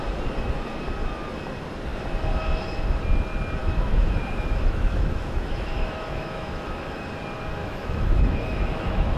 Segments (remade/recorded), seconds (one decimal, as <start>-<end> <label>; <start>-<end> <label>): 0.0-3.6 recorded; 3.6-6.9 remade; 6.9-7.6 recorded; 7.6-9.2 remade